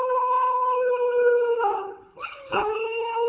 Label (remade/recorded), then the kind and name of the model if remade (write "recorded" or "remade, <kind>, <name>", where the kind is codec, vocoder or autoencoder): remade, codec, HILCodec